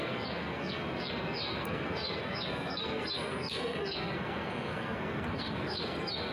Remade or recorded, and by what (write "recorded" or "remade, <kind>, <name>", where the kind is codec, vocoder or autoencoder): remade, codec, SNAC